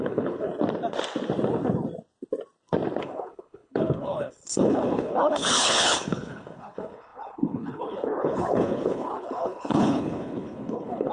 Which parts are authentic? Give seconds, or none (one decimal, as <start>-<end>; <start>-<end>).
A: 0.5-3.0